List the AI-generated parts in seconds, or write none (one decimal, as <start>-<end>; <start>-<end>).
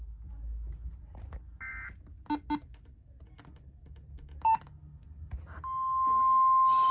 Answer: none